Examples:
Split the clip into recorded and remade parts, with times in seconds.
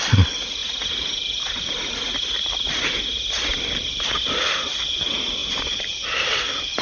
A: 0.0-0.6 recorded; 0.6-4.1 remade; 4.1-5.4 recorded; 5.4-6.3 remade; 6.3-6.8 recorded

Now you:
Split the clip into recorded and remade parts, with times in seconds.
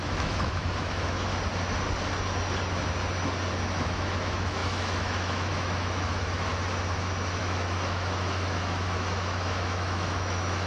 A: 0.0-1.3 remade; 1.3-3.8 recorded; 3.8-6.5 remade; 6.5-7.4 recorded; 7.4-10.7 remade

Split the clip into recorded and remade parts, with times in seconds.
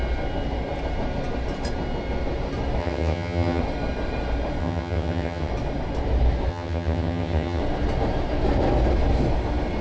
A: 0.0-2.8 recorded; 2.8-3.6 remade; 3.6-4.6 recorded; 4.6-5.5 remade; 5.5-6.5 recorded; 6.5-7.6 remade; 7.6-9.8 recorded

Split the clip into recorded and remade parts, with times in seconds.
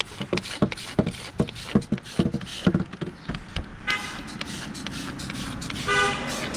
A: 0.0-6.6 recorded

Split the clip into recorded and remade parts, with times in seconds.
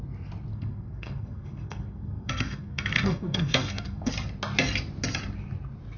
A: 0.0-0.5 recorded; 0.5-4.1 remade; 4.1-6.0 recorded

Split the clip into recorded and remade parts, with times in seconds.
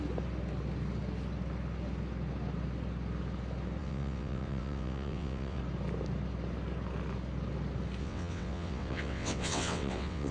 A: 0.0-3.8 recorded; 3.8-5.6 remade; 5.6-8.0 recorded; 8.0-10.3 remade